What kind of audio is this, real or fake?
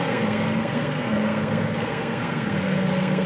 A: fake